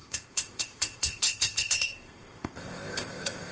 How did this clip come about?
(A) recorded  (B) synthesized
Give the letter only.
B